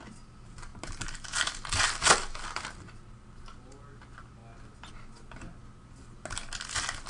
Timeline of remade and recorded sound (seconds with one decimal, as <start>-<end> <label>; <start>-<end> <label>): 0.0-7.1 recorded